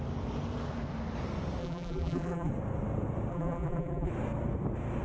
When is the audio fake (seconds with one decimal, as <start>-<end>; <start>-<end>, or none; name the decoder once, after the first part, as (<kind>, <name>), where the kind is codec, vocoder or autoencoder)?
1.6-2.5 (vocoder, BigVGAN v2); 3.3-4.1